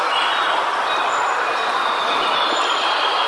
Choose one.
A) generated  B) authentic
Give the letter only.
B